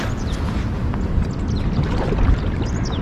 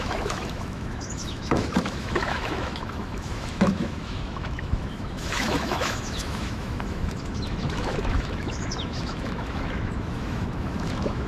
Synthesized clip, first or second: second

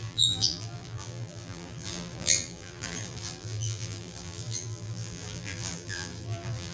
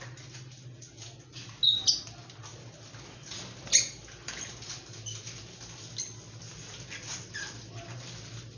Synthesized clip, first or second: first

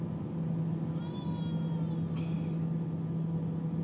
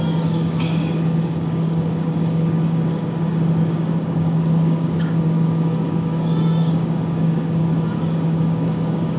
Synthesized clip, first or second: second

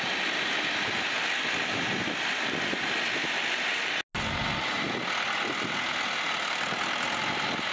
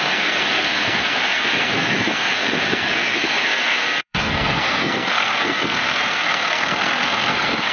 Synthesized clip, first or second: second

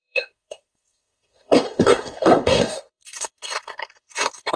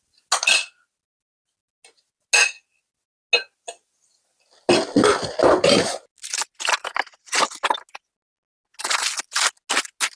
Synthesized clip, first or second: first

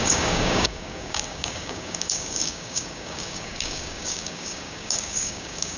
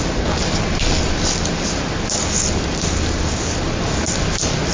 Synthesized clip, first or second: first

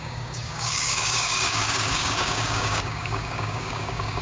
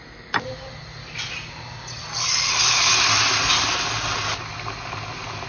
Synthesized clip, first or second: first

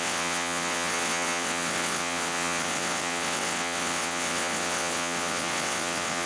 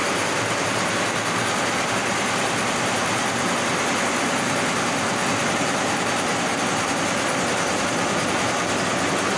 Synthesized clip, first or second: first